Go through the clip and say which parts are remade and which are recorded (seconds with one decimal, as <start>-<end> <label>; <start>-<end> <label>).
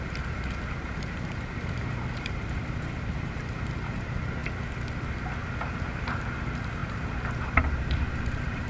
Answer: 0.0-4.4 remade; 4.4-5.7 recorded; 5.7-8.7 remade